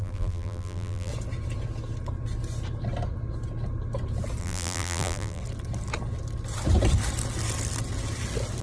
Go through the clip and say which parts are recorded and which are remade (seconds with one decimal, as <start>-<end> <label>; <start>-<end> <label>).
0.0-1.1 remade; 1.1-4.4 recorded; 4.4-5.4 remade; 5.4-8.6 recorded